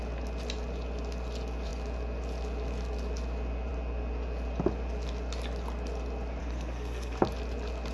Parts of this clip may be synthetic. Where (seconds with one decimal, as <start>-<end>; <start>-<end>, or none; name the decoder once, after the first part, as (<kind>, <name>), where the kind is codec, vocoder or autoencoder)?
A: 6.4-7.2 (codec, SNAC)